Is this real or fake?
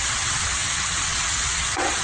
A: fake